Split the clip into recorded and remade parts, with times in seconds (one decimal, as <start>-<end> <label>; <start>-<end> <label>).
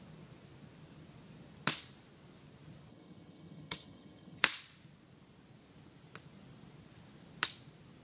0.0-2.9 recorded; 2.9-4.4 remade; 4.4-8.0 recorded